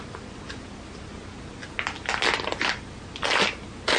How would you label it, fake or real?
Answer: real